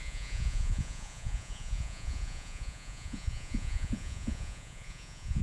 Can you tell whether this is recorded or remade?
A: remade